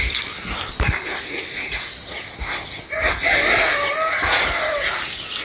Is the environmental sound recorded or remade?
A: recorded